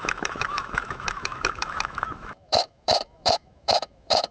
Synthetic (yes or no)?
yes